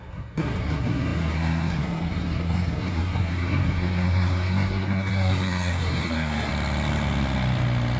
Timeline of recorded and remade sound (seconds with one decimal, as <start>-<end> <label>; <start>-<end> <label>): 0.0-6.5 remade; 6.5-8.0 recorded